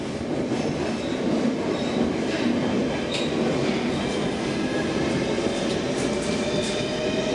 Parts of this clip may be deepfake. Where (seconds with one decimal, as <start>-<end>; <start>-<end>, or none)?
none